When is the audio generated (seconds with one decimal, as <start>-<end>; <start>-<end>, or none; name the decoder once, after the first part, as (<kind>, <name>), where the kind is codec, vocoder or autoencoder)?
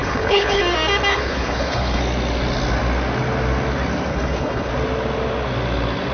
0.0-0.6 (codec, HILCodec); 1.1-2.0; 4.1-4.7